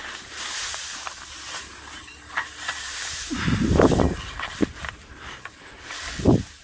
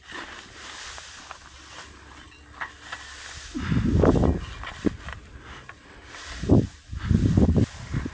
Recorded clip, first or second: second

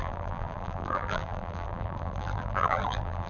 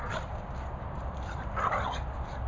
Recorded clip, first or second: second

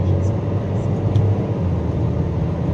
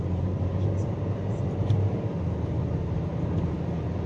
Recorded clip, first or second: first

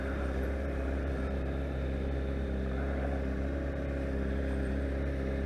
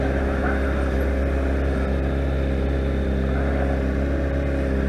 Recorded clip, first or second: second